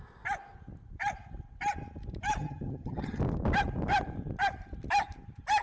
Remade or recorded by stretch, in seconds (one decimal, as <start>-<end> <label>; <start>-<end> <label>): 0.0-2.4 recorded; 2.4-3.2 remade; 3.2-5.6 recorded